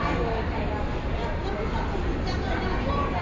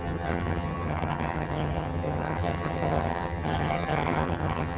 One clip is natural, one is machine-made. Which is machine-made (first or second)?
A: second